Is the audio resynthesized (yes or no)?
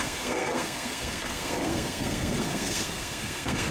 yes